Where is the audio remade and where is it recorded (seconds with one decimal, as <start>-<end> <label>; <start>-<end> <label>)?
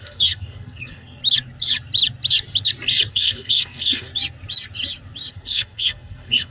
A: 0.0-1.2 remade; 1.2-3.1 recorded; 3.1-4.1 remade; 4.1-5.3 recorded; 5.3-6.5 remade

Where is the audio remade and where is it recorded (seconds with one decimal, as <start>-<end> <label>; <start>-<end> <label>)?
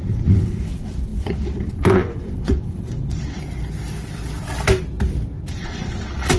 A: 0.0-3.4 remade; 3.4-5.5 recorded; 5.5-6.4 remade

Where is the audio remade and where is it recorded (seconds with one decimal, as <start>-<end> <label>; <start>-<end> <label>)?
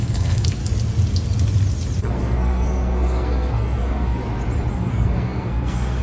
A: 0.0-0.6 remade; 0.6-2.0 recorded; 2.0-4.2 remade; 4.2-4.7 recorded; 4.7-6.0 remade